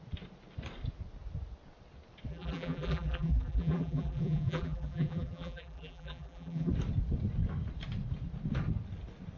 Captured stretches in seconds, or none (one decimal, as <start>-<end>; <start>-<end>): 0.0-2.3; 6.7-9.4